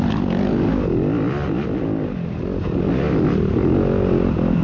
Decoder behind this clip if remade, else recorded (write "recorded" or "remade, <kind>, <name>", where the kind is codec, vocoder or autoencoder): recorded